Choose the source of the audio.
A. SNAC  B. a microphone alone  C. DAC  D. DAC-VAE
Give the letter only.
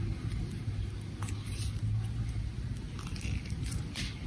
B